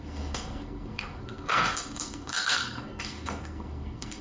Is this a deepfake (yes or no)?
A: yes